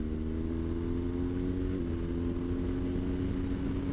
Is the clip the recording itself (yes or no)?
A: yes